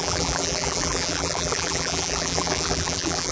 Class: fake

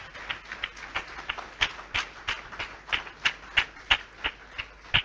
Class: real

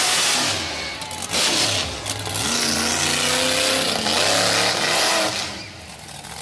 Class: real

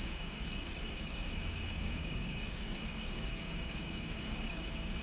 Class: fake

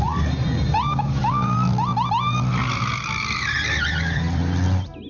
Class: real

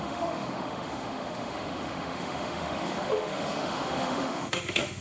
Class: fake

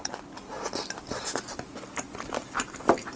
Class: real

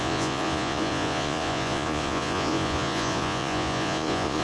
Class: fake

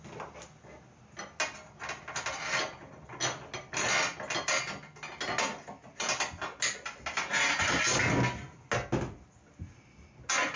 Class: real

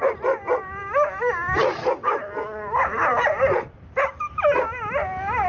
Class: real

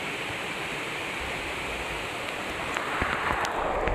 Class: real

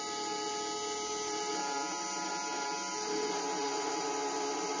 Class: real